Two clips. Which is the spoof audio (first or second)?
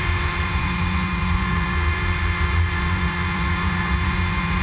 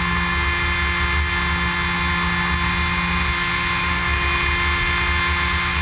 first